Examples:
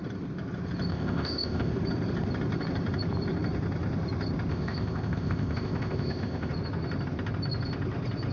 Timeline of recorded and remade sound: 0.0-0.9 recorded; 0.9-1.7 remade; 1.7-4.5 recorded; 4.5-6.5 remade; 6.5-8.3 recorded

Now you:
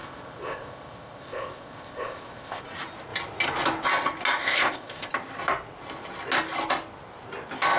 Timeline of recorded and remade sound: 0.0-2.6 remade; 2.6-4.4 recorded; 4.4-5.1 remade; 5.1-7.8 recorded

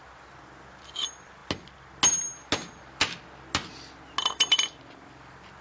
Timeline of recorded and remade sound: 0.0-5.6 recorded

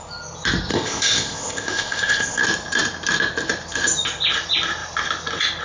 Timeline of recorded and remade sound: 0.0-0.7 recorded; 0.7-2.4 remade; 2.4-5.6 recorded

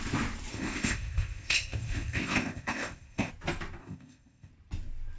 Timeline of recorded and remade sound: 0.0-0.5 recorded; 0.5-3.3 remade; 3.3-3.8 recorded; 3.8-4.5 remade; 4.5-5.2 recorded

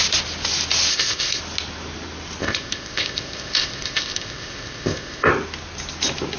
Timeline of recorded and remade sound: 0.0-0.9 recorded; 0.9-1.4 remade; 1.4-2.4 recorded; 2.4-5.3 remade; 5.3-6.4 recorded